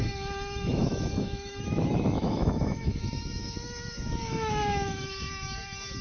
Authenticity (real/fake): fake